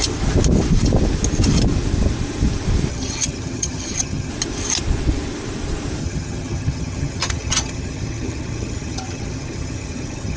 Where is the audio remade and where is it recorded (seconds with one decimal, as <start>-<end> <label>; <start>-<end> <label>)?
0.0-2.9 recorded; 2.9-4.3 remade; 4.3-6.0 recorded; 6.0-10.4 remade